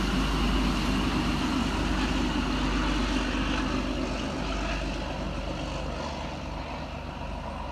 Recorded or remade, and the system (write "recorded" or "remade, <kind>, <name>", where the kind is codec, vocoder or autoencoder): recorded